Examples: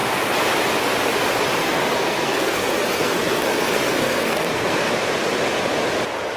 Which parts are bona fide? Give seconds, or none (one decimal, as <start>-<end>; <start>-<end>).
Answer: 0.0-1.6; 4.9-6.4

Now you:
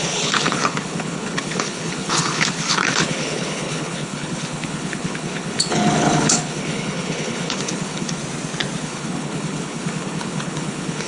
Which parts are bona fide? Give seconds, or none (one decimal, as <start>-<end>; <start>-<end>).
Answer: 8.2-8.8

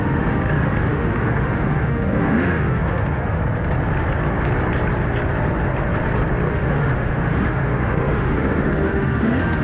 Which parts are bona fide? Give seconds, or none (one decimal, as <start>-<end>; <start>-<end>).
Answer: 3.4-6.5

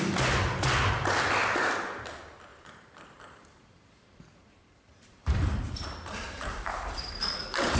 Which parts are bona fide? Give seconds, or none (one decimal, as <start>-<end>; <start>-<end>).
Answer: 0.0-2.5; 7.2-7.8

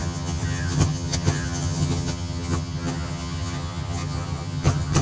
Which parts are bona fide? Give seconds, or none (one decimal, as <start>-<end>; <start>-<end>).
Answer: none